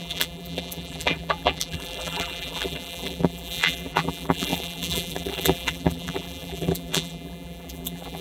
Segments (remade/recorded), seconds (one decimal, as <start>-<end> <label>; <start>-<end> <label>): 0.0-8.2 remade